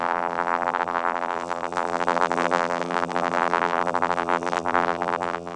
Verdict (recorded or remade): remade